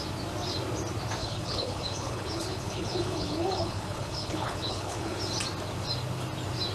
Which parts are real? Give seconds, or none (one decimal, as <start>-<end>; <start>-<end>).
0.0-1.2; 5.2-6.7